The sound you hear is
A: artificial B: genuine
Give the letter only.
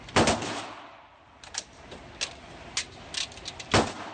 B